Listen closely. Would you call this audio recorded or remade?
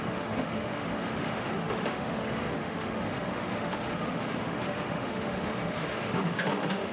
remade